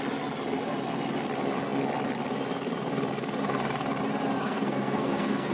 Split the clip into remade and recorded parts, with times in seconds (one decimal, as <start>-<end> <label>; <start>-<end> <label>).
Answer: 0.0-4.4 recorded; 4.4-5.5 remade